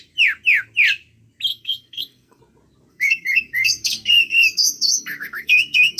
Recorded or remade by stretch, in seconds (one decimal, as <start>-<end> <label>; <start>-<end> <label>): 0.0-1.5 recorded; 1.5-2.4 remade; 2.4-2.9 recorded; 2.9-6.0 remade

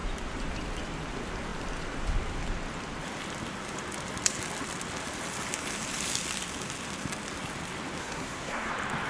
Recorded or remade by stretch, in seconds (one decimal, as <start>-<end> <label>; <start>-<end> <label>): 0.0-8.0 recorded; 8.0-8.7 remade; 8.7-9.1 recorded